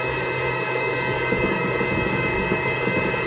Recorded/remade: remade